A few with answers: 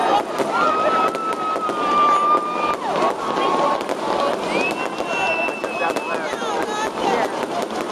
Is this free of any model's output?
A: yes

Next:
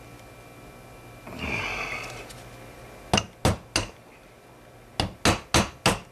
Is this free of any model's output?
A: yes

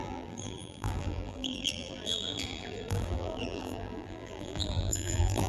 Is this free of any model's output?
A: no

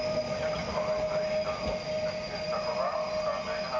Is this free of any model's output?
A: yes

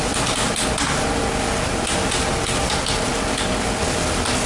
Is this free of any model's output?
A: yes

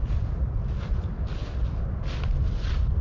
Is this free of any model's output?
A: yes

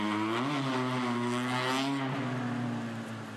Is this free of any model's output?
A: yes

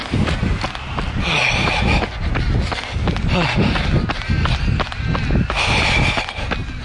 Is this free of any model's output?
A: yes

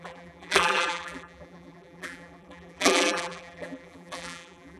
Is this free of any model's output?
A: no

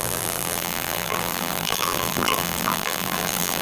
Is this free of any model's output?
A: no